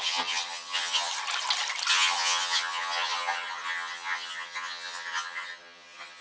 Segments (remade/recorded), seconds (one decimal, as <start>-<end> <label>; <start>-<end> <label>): 0.0-1.1 remade; 1.1-1.9 recorded; 1.9-6.2 remade